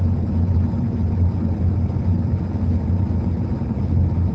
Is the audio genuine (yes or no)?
yes